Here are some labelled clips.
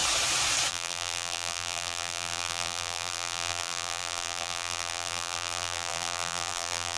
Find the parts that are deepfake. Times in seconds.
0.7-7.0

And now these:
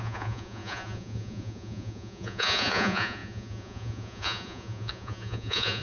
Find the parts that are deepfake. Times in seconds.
0.0-5.8

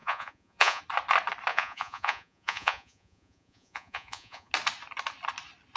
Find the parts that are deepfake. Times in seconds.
0.0-0.8; 1.5-4.5